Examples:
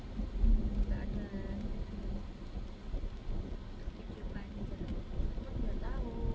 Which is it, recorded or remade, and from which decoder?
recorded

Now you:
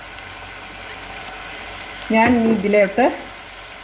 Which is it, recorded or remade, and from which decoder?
recorded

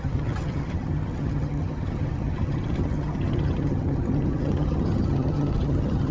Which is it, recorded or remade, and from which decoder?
remade, vocoder, HiFi-GAN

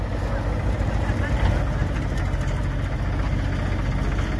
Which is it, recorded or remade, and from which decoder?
recorded